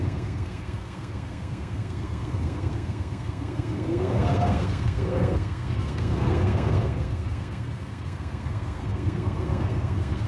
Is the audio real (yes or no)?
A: no